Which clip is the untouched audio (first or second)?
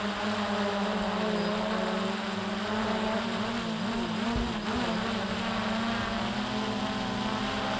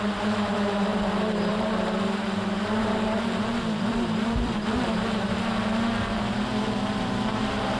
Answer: first